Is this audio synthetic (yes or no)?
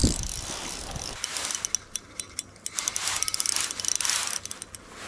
no